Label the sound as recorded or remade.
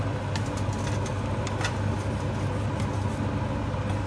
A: recorded